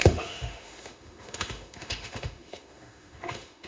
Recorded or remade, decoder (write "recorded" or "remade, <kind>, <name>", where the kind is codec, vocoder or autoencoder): remade, autoencoder, DAC-VAE